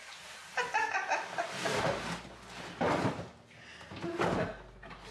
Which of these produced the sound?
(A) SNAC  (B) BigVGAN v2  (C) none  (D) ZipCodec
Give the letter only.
C